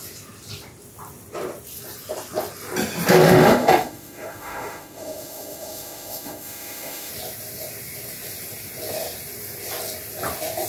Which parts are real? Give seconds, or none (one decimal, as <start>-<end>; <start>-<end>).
0.0-3.1; 7.1-10.7